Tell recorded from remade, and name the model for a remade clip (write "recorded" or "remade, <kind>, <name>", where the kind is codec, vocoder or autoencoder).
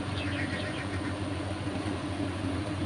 remade, vocoder, Vocos